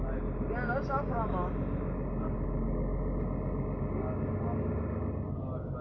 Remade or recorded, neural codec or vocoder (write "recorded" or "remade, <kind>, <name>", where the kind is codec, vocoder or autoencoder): recorded